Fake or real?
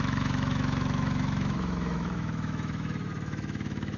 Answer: fake